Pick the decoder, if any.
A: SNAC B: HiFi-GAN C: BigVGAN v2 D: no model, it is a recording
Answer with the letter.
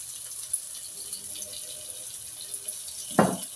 D